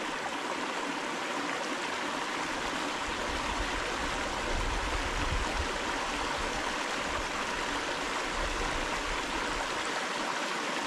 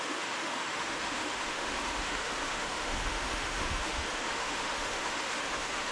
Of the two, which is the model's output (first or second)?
second